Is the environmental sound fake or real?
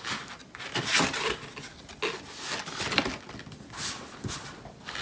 real